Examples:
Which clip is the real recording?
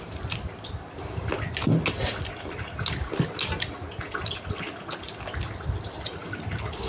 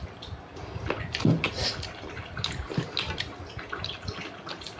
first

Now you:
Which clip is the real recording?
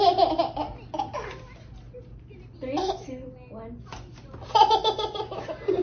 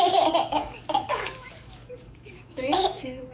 first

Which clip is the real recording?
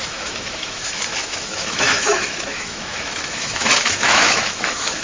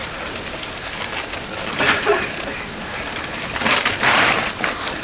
second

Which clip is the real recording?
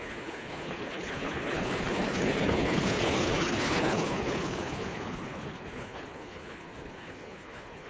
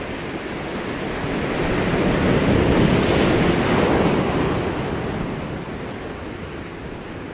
second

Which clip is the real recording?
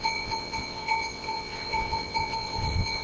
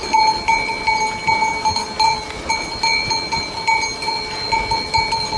second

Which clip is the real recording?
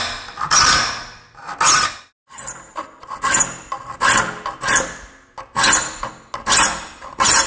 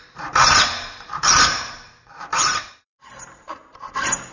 first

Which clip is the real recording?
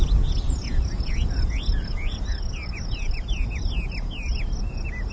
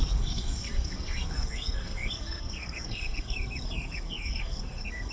first